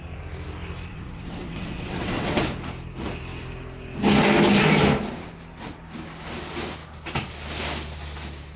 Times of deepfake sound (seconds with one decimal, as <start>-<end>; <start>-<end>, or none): 0.9-2.4

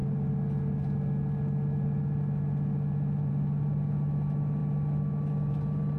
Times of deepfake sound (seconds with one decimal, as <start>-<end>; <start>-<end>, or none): none

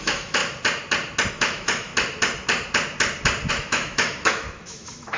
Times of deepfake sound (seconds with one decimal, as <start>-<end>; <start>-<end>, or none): 0.0-0.4; 1.3-1.9; 3.5-5.2

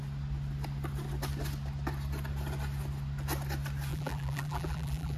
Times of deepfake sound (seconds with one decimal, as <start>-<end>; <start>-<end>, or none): 3.9-5.2

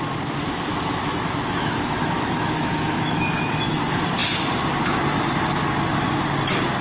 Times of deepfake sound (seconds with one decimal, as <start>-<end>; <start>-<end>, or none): 0.7-3.5